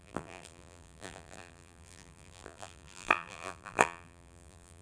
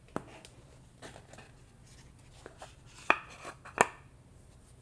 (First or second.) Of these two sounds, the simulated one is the first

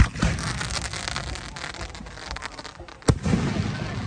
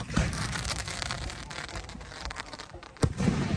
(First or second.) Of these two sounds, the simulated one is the second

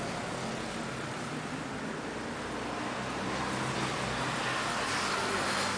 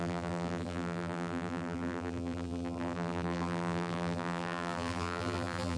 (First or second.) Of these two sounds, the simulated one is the second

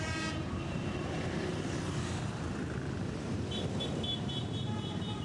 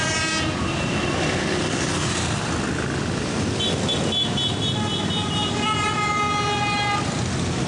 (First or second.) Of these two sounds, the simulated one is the first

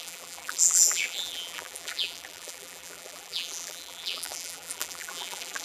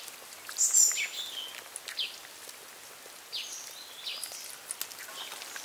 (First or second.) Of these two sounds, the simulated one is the first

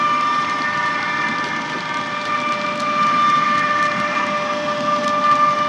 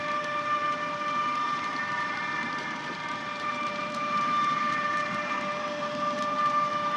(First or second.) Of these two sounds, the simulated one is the second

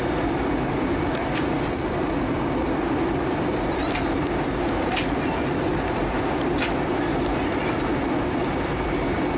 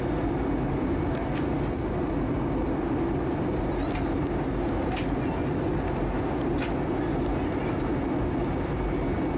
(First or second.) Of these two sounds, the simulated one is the first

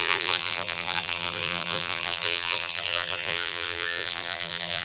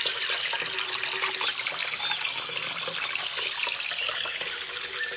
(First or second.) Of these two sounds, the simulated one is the first